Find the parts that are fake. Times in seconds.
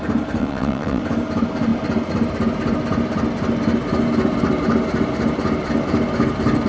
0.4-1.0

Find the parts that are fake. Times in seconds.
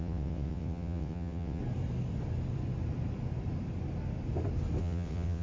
0.0-1.6; 4.8-5.4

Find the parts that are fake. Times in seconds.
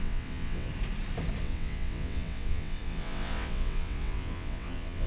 0.0-0.7; 1.4-5.1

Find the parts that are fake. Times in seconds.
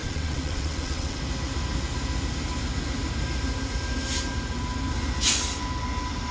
0.0-1.2